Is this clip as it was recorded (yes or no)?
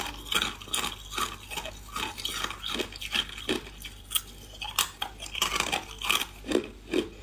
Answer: yes